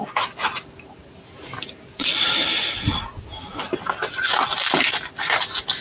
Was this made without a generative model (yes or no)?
yes